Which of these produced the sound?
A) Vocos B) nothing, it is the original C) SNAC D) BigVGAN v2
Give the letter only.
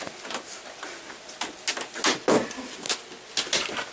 B